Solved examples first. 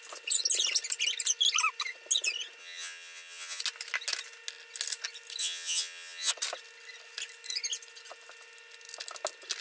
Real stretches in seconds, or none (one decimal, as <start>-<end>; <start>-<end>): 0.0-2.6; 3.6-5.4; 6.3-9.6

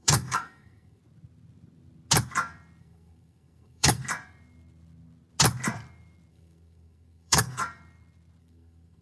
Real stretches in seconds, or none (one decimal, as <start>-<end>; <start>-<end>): 1.0-2.8; 4.0-6.3; 7.6-8.4

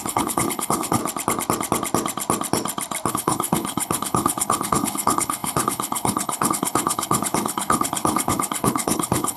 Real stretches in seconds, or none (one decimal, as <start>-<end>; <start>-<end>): 1.0-3.1